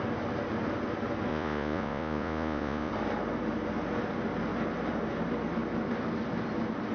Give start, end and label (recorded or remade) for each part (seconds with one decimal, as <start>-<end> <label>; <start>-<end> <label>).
0.0-1.3 recorded; 1.3-2.9 remade; 2.9-6.9 recorded